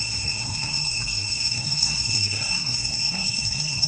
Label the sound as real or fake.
fake